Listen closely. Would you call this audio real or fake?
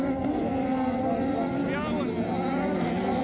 real